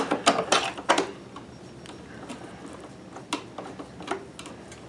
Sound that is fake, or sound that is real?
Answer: real